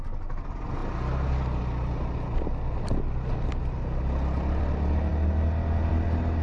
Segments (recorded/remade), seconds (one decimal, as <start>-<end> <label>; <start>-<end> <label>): 0.0-6.4 recorded